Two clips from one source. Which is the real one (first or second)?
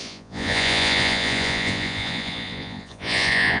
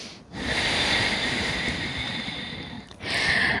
second